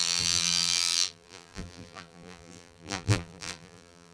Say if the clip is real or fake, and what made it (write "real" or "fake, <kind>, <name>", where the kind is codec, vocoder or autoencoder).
fake, vocoder, BigVGAN v2